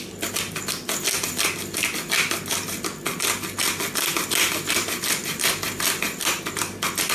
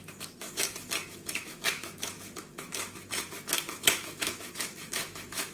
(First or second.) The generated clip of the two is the second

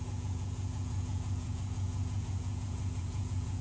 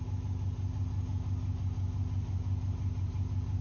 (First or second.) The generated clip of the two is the first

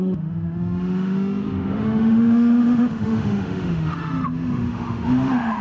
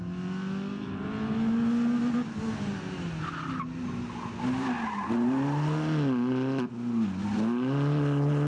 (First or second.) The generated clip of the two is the first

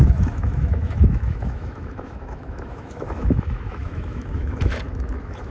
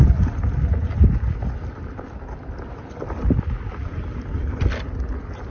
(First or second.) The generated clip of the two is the first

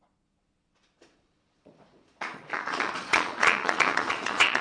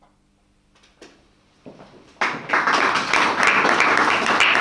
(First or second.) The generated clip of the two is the first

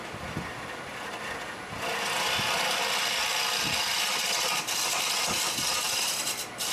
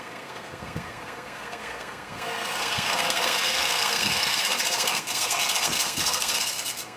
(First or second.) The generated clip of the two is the second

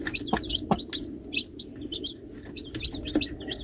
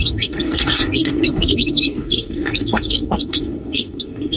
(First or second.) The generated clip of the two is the second